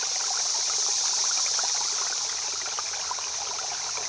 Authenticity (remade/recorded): remade